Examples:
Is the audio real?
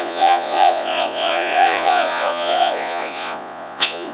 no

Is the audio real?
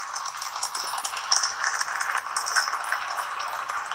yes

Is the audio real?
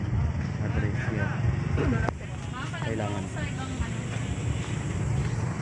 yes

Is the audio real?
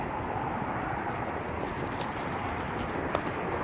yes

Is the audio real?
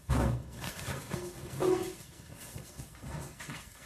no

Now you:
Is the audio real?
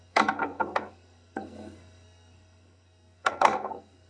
no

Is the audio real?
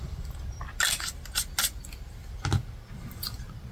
yes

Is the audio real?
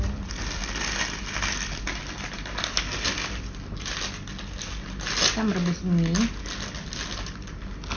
yes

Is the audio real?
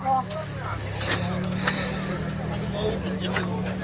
yes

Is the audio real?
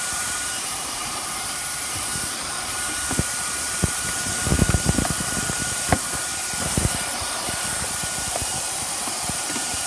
no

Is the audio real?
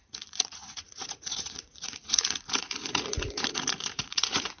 no